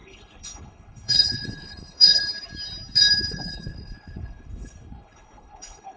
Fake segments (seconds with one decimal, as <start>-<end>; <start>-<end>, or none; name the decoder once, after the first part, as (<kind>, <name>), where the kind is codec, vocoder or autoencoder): 0.0-2.2 (codec, HILCodec); 3.3-6.0

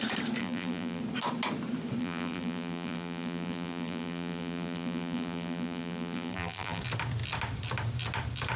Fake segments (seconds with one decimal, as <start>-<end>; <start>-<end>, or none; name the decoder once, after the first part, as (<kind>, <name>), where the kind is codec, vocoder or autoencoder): 0.4-1.0 (vocoder, BigVGAN v2); 2.0-6.8

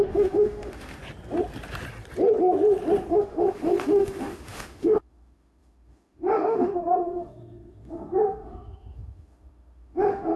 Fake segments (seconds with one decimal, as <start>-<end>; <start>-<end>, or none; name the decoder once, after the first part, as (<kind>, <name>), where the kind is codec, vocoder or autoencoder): 0.0-1.0 (autoencoder, DAC-VAE); 3.1-10.4